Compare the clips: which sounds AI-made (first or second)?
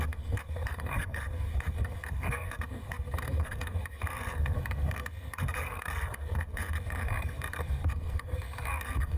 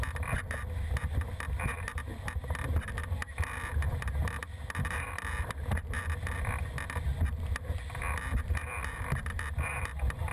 first